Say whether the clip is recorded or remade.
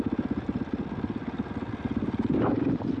recorded